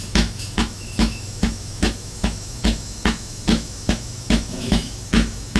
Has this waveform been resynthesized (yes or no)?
yes